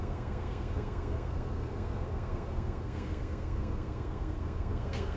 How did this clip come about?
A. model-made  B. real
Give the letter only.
A